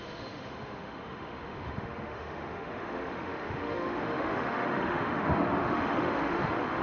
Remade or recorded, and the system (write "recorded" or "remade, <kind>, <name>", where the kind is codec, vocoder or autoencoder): remade, autoencoder, DAC-VAE